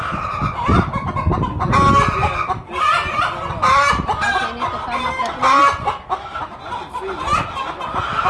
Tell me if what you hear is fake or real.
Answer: real